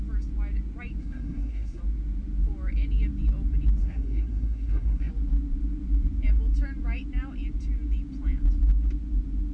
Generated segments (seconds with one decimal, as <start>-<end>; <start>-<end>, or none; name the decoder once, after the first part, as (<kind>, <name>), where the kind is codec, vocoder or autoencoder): 1.0-1.8 (codec, SNAC); 3.8-5.1